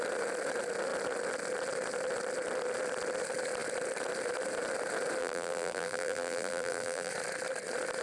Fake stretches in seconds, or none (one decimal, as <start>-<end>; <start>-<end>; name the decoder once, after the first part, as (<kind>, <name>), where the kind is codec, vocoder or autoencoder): 5.2-7.1 (vocoder, BigVGAN v2)